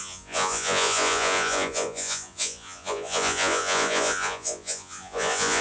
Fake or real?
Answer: fake